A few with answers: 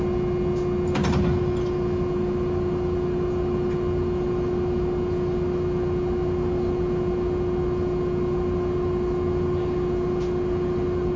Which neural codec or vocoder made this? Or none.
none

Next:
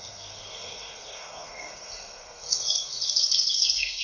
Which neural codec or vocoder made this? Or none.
codec, SNAC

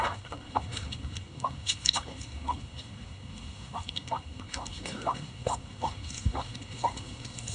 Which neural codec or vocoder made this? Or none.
codec, SNAC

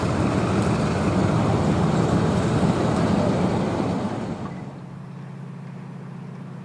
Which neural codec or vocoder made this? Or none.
none